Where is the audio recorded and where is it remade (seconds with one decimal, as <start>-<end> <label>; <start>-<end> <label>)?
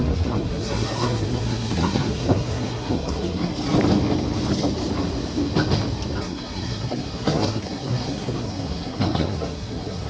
0.0-3.5 remade; 3.5-6.2 recorded; 6.2-10.1 remade